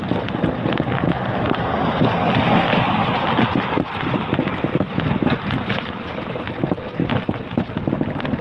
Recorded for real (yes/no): yes